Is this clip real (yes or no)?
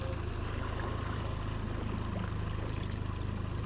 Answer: yes